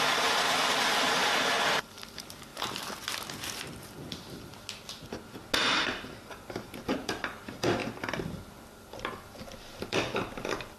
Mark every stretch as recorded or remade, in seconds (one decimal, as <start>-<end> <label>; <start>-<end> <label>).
0.0-2.5 remade; 2.5-3.8 recorded; 3.8-4.5 remade; 4.5-6.3 recorded; 6.3-10.8 remade